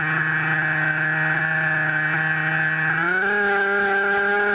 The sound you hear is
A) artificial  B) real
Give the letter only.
B